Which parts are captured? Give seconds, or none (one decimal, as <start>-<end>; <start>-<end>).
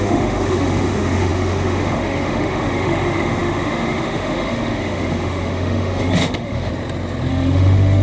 6.7-7.3